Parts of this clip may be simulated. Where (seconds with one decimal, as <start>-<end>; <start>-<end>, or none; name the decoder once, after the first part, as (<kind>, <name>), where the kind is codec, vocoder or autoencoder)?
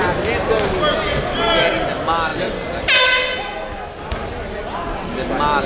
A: none